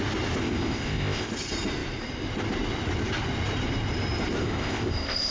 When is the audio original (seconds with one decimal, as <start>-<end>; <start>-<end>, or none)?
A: 0.0-0.4; 1.3-4.4